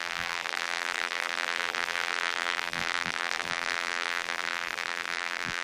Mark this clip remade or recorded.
remade